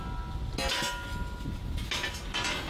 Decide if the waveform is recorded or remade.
recorded